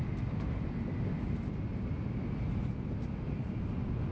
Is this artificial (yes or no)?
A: no